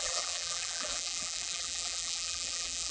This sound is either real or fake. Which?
fake